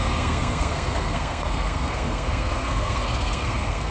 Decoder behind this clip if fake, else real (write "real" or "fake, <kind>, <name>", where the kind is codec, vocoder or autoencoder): fake, codec, SNAC